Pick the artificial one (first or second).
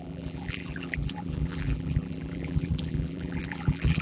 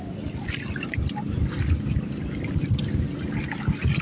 first